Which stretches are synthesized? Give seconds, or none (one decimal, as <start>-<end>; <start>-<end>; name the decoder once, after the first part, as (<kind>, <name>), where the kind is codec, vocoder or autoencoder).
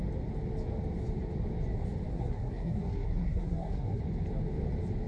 2.1-4.0 (codec, SNAC)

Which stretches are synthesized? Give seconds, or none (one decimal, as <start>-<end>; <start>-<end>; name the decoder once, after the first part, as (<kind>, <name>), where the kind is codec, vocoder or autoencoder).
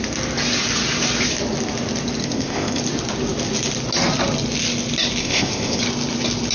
2.2-2.8 (codec, ZipCodec); 5.2-5.8